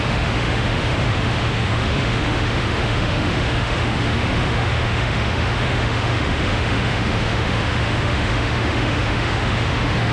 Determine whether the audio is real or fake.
fake